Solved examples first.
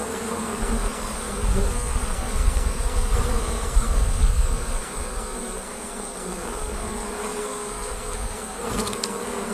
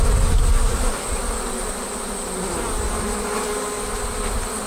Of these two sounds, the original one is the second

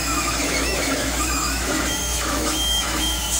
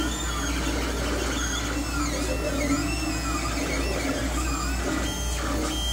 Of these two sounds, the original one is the second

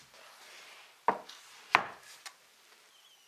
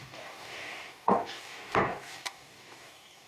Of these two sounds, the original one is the first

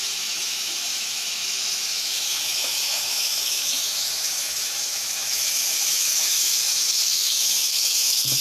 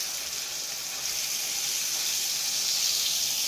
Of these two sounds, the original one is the second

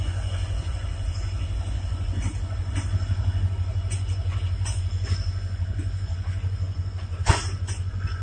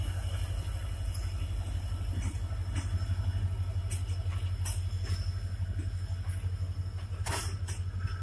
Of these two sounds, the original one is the second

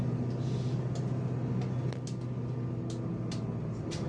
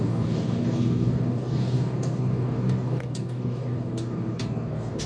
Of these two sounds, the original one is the first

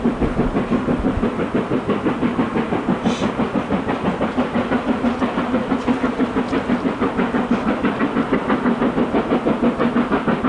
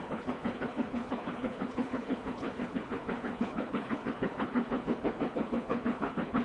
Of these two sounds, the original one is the first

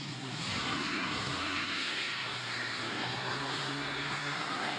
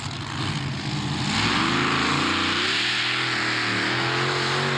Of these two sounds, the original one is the second